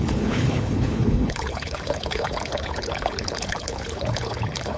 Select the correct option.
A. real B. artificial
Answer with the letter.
B